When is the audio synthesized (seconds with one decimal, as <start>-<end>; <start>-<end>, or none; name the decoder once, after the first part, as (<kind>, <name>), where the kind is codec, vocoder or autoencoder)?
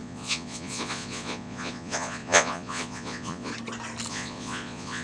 0.0-3.5 (vocoder, Vocos); 4.1-5.0